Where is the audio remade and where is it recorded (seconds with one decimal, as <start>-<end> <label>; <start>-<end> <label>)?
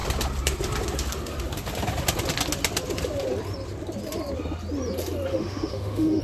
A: 0.0-5.3 recorded; 5.3-6.2 remade